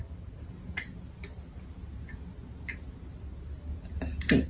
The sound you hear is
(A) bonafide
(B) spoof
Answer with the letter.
A